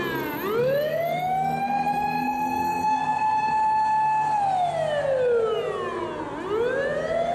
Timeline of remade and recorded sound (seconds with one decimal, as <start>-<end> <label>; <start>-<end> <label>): 0.0-0.6 recorded; 0.6-3.5 remade; 3.5-7.3 recorded